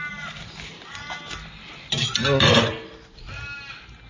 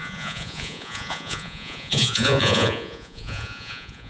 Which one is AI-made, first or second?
second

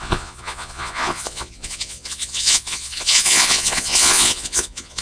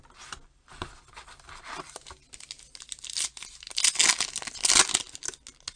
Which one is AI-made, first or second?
first